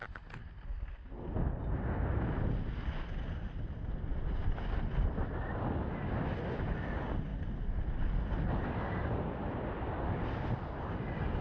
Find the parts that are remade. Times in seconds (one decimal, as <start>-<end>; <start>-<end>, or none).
none